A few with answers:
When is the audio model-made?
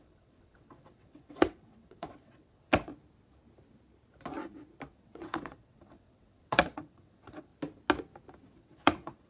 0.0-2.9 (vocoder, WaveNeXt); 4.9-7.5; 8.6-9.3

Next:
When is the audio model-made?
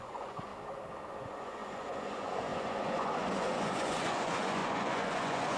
0.0-0.5 (vocoder, Vocos); 1.2-5.6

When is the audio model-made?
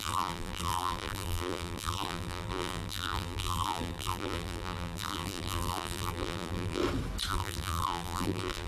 0.0-6.8 (vocoder, BigVGAN v2); 7.3-8.7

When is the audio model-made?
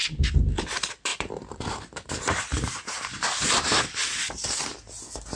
1.1-3.8 (vocoder, BigVGAN v2)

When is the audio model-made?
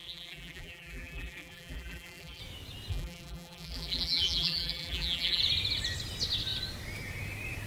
0.0-2.4 (vocoder, BigVGAN v2); 2.9-5.4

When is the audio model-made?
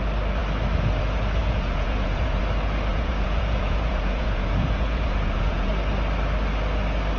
1.4-2.4 (vocoder, Vocos); 2.9-5.7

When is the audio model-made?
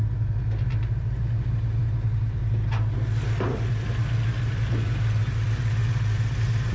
none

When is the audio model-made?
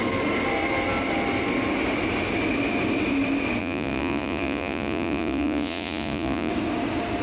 3.6-6.5 (vocoder, Vocos)